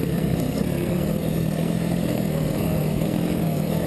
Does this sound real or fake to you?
fake